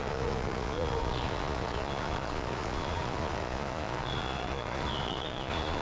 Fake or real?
fake